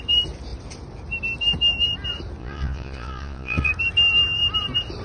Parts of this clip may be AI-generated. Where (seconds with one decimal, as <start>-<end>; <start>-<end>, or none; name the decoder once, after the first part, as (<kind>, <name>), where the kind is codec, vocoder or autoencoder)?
2.4-3.7 (vocoder, Vocos)